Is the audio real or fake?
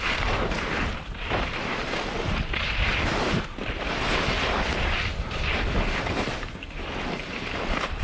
fake